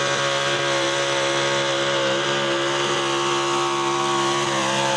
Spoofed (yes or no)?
no